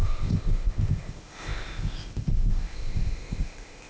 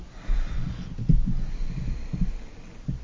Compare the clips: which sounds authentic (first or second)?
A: second